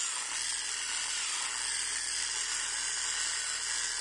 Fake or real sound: real